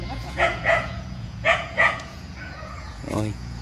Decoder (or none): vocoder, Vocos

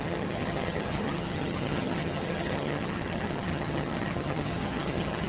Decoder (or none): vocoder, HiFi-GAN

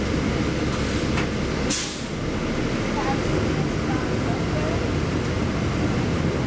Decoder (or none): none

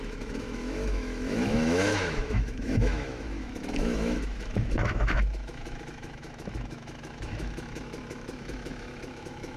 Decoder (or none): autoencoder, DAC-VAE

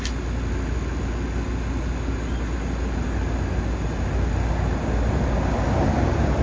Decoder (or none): none